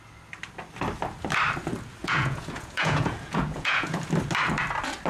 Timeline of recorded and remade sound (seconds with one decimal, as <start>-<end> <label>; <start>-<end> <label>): 0.0-2.0 recorded; 2.0-4.0 remade; 4.0-5.1 recorded